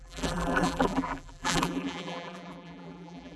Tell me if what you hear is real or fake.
fake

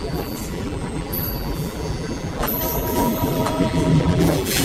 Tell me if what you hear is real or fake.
fake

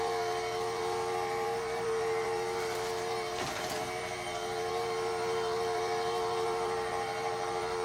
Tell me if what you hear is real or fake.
fake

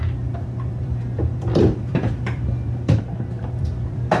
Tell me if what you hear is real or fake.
fake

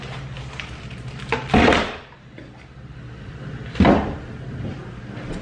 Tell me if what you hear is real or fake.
real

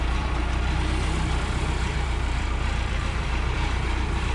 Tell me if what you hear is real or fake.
fake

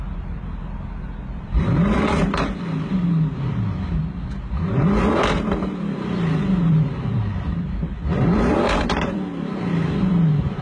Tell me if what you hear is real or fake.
fake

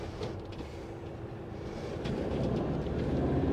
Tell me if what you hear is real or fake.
fake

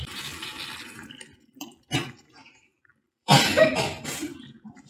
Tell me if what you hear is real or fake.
fake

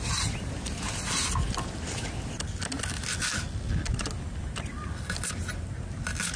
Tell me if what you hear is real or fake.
real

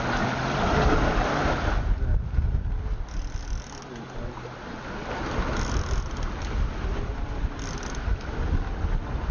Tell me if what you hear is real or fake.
real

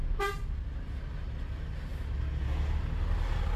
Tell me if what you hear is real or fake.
real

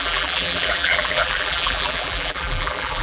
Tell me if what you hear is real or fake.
fake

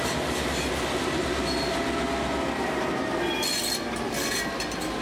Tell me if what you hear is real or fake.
real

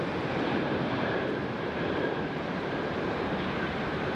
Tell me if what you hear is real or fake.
fake